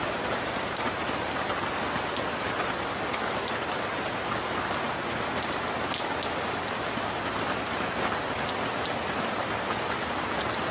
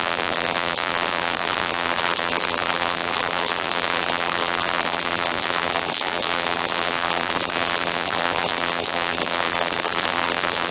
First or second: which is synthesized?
second